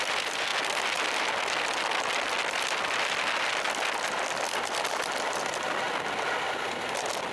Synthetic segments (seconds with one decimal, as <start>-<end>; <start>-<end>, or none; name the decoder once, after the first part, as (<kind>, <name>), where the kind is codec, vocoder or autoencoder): 0.0-0.5 (vocoder, BigVGAN v2); 2.5-7.3